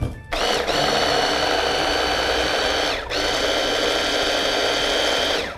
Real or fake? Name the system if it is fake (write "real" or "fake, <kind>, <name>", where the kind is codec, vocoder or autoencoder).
real